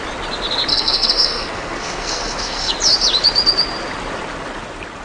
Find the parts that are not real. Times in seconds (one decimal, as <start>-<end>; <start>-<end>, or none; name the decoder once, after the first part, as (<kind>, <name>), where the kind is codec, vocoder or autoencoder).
0.7-2.7 (codec, SNAC)